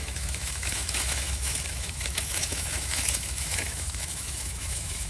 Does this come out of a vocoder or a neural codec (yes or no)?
yes